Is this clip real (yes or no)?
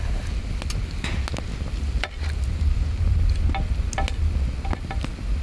yes